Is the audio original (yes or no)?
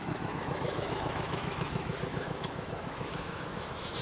no